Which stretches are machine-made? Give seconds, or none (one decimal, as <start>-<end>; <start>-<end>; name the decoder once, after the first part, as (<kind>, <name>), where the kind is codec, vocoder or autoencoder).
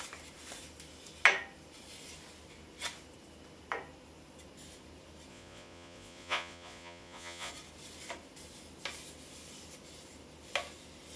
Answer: 5.3-7.5 (vocoder, Vocos)